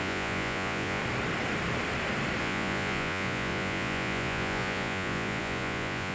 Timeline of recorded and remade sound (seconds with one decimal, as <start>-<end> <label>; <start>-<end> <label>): 0.0-1.0 remade; 1.0-2.4 recorded; 2.4-6.1 remade